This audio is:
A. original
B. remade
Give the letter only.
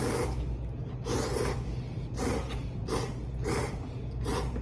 A